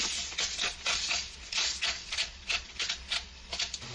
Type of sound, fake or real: fake